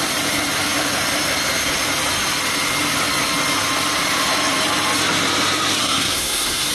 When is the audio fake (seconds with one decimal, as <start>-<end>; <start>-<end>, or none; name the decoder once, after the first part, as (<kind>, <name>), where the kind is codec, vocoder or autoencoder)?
5.8-6.7 (codec, SNAC)